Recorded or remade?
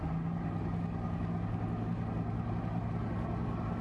recorded